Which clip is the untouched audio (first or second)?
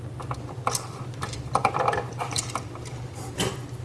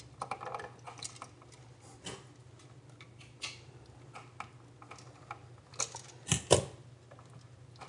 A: second